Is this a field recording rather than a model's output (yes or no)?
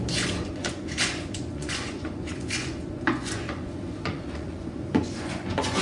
no